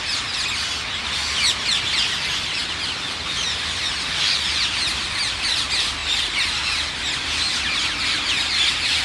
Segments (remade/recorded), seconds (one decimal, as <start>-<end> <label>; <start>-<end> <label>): 0.0-9.0 recorded